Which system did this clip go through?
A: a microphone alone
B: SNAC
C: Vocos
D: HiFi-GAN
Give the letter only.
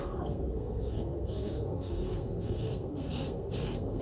B